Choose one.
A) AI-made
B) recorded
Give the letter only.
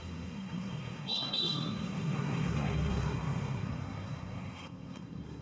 A